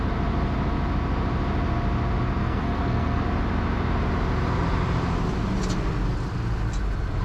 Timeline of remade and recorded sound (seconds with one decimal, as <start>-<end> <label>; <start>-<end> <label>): 0.0-2.4 recorded; 2.4-3.2 remade; 3.2-7.2 recorded